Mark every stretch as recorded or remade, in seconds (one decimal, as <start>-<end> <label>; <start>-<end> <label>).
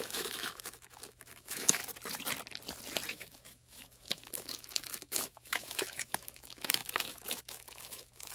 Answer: 0.0-1.8 remade; 1.8-3.1 recorded; 3.1-8.3 remade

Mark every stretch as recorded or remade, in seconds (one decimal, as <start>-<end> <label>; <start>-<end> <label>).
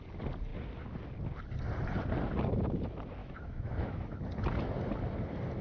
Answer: 0.0-3.2 recorded; 3.2-4.2 remade; 4.2-5.6 recorded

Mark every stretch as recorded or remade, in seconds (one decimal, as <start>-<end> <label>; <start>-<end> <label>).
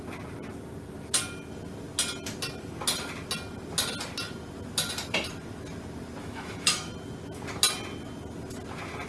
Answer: 0.0-6.2 recorded; 6.2-6.9 remade; 6.9-9.1 recorded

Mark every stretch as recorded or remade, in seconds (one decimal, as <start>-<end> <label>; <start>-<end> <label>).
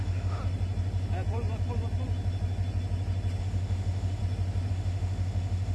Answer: 0.0-0.4 remade; 0.4-3.4 recorded; 3.4-4.2 remade; 4.2-4.7 recorded; 4.7-5.7 remade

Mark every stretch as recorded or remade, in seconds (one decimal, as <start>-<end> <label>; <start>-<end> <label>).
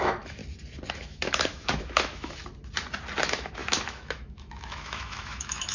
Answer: 0.0-0.4 remade; 0.4-0.9 recorded; 0.9-2.4 remade; 2.4-3.2 recorded; 3.2-5.7 remade